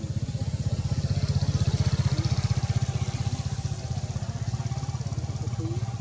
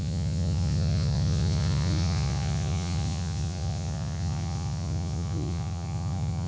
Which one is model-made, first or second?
second